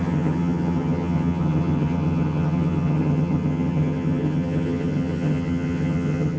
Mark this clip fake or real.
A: fake